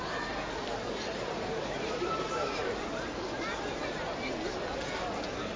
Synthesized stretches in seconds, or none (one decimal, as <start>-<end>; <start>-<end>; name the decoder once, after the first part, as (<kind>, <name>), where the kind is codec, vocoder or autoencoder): 1.1-4.3 (vocoder, BigVGAN v2)